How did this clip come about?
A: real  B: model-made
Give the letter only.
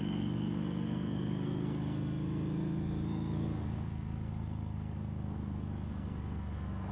B